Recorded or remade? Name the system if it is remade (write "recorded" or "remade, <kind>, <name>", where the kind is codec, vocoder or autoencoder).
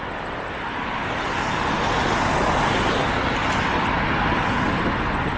recorded